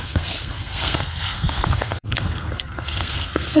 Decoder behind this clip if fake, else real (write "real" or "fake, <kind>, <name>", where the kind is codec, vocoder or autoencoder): fake, codec, SNAC